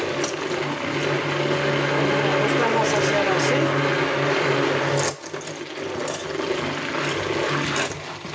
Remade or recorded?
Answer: recorded